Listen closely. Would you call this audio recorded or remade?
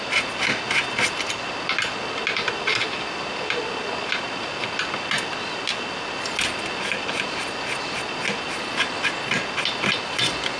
recorded